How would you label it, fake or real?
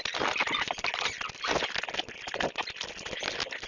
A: real